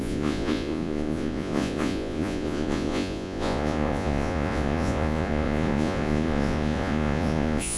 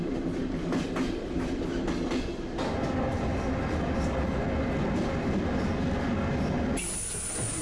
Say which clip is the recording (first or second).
second